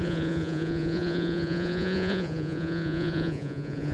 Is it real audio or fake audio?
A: fake